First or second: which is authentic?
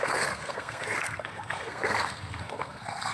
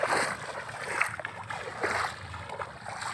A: second